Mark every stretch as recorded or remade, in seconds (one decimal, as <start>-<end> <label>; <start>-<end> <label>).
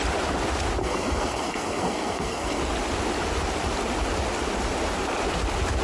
0.0-0.8 recorded; 0.8-2.6 remade; 2.6-5.8 recorded